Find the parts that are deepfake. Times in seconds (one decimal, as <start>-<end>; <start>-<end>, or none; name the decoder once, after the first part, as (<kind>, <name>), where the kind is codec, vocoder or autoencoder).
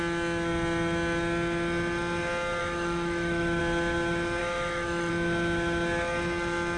2.6-3.6 (autoencoder, DAC-VAE); 4.4-5.1